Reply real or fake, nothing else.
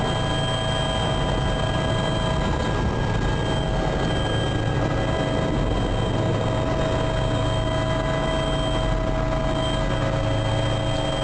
real